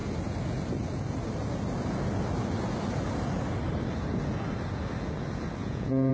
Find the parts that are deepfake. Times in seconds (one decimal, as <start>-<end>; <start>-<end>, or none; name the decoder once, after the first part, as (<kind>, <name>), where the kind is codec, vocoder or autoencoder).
5.6-6.1 (vocoder, Vocos)